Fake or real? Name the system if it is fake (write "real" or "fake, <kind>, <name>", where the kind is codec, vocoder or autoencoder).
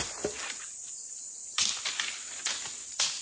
real